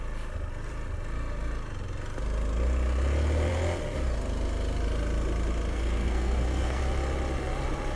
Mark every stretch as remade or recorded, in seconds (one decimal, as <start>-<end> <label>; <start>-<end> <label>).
0.0-5.7 recorded; 5.7-6.8 remade; 6.8-8.0 recorded